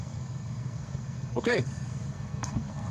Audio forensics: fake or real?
fake